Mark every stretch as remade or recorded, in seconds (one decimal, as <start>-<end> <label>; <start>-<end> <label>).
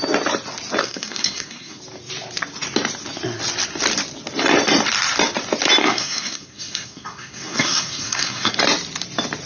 0.0-0.8 recorded; 0.8-1.8 remade; 1.8-5.8 recorded; 5.8-8.6 remade; 8.6-9.5 recorded